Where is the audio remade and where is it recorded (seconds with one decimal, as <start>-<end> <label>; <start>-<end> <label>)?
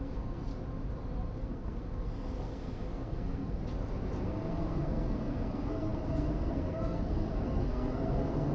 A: 0.0-0.5 remade; 0.5-1.4 recorded; 1.4-3.6 remade; 3.6-4.2 recorded; 4.2-8.5 remade